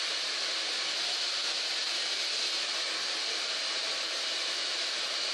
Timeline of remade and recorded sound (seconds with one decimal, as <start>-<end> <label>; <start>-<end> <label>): 0.0-5.3 recorded